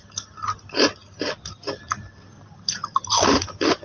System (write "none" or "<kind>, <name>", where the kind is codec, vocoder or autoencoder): vocoder, BigVGAN v2